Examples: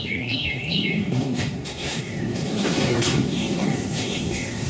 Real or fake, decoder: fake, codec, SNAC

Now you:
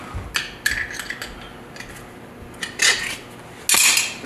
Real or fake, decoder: real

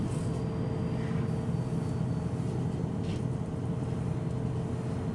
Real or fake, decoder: real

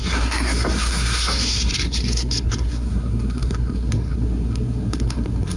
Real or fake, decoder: fake, codec, SNAC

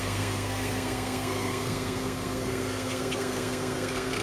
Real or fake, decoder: fake, codec, SNAC